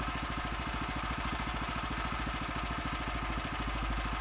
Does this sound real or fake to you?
real